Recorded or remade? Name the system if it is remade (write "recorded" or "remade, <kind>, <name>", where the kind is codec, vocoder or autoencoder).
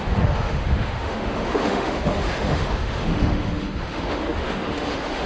remade, autoencoder, DAC-VAE